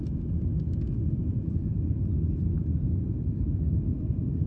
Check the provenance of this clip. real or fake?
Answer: real